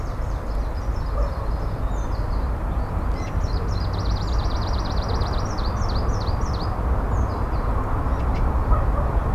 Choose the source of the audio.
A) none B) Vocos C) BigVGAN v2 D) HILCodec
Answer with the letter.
A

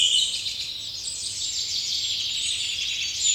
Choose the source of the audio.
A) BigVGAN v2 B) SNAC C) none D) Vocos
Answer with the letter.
C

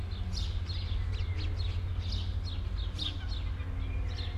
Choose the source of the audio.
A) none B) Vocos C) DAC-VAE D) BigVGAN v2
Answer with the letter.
A